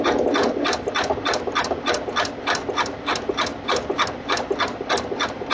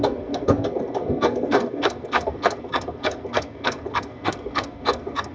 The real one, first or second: first